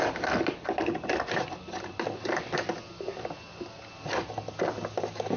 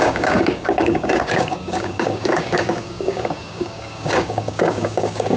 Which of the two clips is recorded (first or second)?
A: first